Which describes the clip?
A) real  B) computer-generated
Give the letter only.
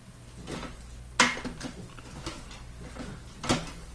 A